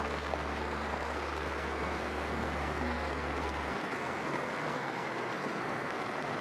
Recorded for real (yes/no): no